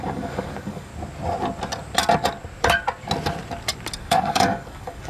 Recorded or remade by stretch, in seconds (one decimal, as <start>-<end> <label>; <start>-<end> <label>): 0.0-0.9 remade; 0.9-4.0 recorded; 4.0-5.1 remade